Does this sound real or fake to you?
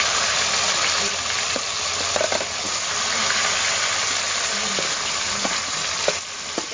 real